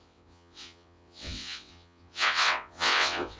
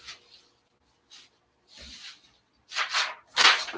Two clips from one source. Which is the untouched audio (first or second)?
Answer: second